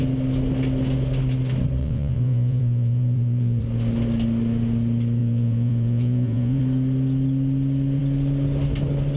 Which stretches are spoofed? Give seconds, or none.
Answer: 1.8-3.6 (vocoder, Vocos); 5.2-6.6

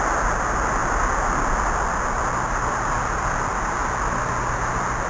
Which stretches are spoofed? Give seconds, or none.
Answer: none

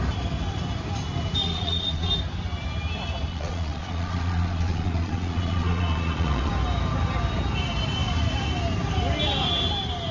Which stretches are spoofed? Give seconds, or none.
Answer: 1.4-2.1 (vocoder, Vocos); 3.3-6.5

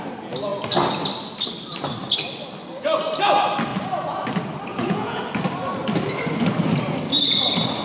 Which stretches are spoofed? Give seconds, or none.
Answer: 4.7-5.2 (vocoder, Vocos)

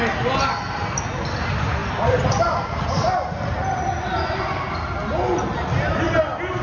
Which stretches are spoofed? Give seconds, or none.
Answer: none

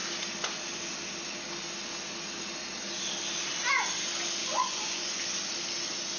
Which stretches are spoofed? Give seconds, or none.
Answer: 4.4-5.2 (vocoder, Vocos)

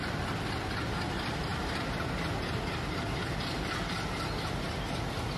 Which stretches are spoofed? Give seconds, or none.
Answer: none